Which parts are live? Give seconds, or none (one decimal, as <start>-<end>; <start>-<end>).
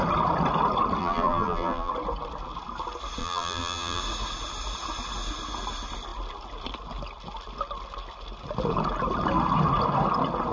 0.0-1.0; 1.9-3.2; 4.0-10.5